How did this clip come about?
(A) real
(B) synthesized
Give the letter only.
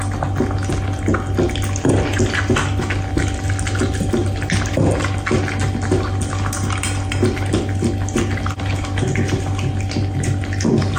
A